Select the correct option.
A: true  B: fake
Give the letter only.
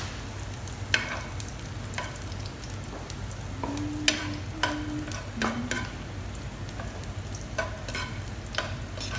A